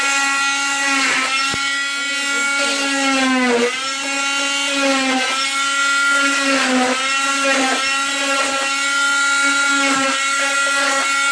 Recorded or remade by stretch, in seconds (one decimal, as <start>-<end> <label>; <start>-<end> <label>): 0.0-11.3 recorded